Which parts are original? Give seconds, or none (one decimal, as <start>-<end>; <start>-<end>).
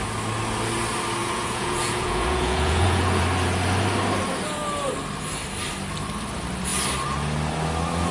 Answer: 0.0-1.2; 3.2-8.1